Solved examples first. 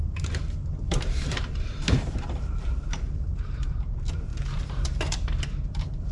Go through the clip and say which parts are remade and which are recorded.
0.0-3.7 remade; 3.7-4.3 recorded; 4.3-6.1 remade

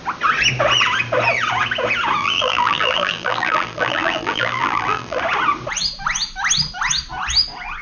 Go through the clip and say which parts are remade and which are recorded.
0.0-2.2 recorded; 2.2-5.2 remade; 5.2-7.8 recorded